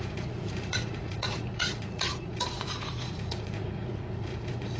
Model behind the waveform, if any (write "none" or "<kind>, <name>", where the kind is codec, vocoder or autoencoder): vocoder, Vocos